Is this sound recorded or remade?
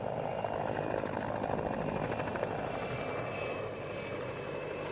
recorded